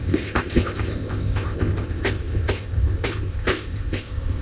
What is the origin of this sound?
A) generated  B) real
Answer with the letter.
A